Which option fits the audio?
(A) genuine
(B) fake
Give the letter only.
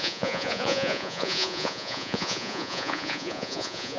B